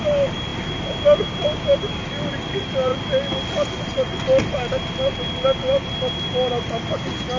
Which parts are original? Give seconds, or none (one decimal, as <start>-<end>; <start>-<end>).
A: 0.0-7.4